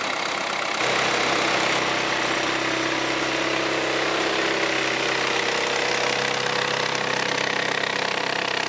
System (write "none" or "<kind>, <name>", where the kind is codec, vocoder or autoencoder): none